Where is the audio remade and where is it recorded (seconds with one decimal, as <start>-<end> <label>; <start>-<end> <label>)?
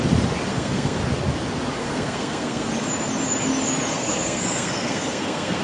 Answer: 0.0-0.5 recorded; 0.5-1.0 remade; 1.0-1.8 recorded; 1.8-2.7 remade; 2.7-3.9 recorded; 3.9-5.6 remade